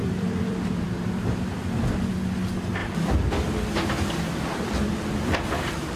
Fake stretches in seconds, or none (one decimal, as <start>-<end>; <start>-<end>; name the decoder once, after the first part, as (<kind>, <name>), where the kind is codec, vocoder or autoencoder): 0.0-1.4 (vocoder, BigVGAN v2)